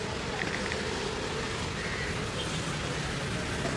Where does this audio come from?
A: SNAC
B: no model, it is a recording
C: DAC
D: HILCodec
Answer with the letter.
B